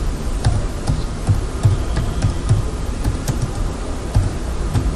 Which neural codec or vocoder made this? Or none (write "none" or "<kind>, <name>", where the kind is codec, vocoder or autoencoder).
vocoder, BigVGAN v2